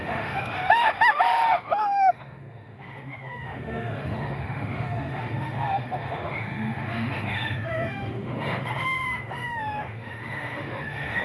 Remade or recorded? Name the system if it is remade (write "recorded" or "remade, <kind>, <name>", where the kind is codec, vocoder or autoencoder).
remade, autoencoder, DAC-VAE